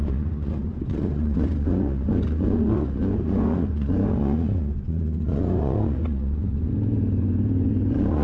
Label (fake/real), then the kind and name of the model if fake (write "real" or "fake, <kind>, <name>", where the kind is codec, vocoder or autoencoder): fake, vocoder, Vocos